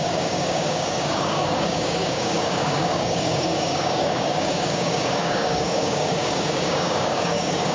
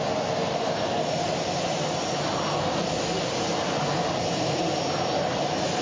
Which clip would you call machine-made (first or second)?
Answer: first